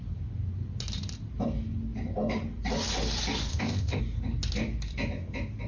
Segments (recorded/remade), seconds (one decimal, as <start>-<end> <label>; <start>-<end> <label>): 0.0-3.5 recorded; 3.5-4.0 remade; 4.0-5.7 recorded

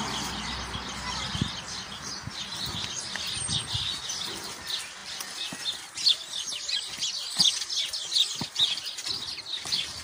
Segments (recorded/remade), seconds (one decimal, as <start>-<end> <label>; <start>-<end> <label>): 0.0-10.0 recorded

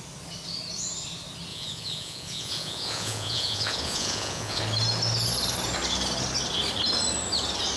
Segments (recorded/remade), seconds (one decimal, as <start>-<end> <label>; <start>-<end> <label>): 0.0-1.5 recorded; 1.5-4.6 remade; 4.6-7.8 recorded

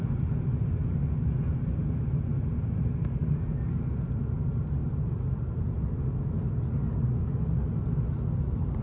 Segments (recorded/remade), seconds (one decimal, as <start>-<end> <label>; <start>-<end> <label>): 0.0-8.8 recorded